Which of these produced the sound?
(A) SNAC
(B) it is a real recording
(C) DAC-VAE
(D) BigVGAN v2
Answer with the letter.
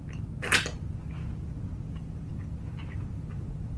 B